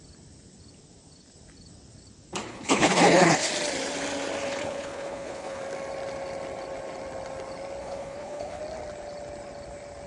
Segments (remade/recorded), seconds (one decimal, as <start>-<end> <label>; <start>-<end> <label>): 0.0-2.5 recorded; 2.5-3.5 remade; 3.5-4.4 recorded; 4.4-5.6 remade; 5.6-7.8 recorded; 7.8-8.6 remade; 8.6-10.1 recorded